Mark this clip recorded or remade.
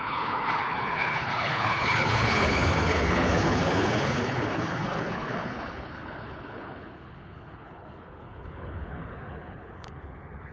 remade